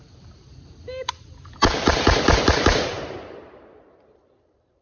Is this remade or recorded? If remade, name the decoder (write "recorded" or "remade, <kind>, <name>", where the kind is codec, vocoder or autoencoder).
remade, vocoder, BigVGAN v2